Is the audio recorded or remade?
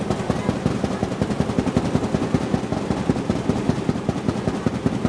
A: recorded